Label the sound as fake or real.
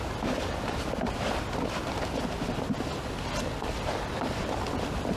real